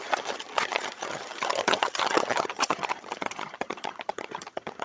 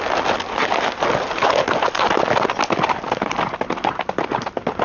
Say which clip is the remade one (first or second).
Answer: first